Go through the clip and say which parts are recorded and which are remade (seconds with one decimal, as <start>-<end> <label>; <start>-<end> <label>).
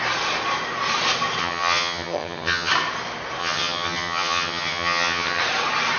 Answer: 0.0-1.4 recorded; 1.4-2.7 remade; 2.7-3.4 recorded; 3.4-5.4 remade; 5.4-6.0 recorded